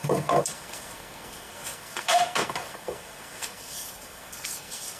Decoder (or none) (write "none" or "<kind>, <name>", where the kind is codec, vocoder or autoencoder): codec, SNAC